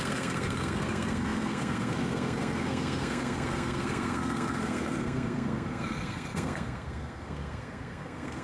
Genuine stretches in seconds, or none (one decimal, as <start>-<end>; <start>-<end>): none